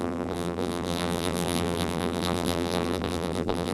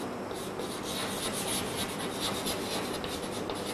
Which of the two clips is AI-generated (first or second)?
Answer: first